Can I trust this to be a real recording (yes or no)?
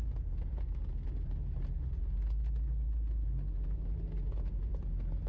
yes